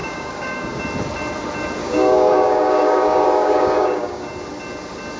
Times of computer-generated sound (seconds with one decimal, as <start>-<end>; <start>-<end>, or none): 0.0-0.8; 1.8-4.3